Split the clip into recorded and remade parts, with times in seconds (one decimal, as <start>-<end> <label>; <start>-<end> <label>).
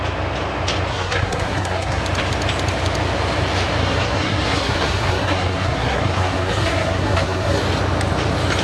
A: 0.0-0.9 recorded; 0.9-2.0 remade; 2.0-3.8 recorded; 3.8-7.6 remade; 7.6-8.6 recorded